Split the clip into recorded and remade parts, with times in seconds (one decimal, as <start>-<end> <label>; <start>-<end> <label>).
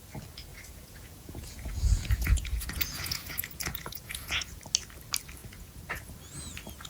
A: 0.0-0.5 recorded; 0.5-4.6 remade; 4.6-5.4 recorded; 5.4-6.1 remade; 6.1-6.9 recorded